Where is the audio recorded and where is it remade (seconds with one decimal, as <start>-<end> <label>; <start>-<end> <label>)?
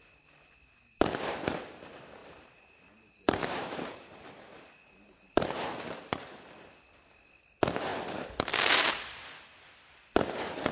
0.0-2.2 recorded; 2.2-6.8 remade; 6.8-10.7 recorded